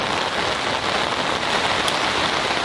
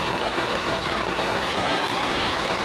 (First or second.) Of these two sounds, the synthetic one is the second